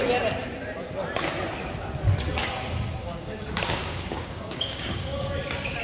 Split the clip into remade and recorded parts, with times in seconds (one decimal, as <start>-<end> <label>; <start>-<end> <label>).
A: 0.0-3.0 recorded; 3.0-5.2 remade; 5.2-5.8 recorded